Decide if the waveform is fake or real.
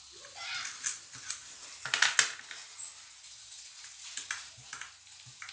real